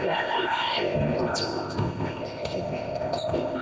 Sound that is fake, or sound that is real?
fake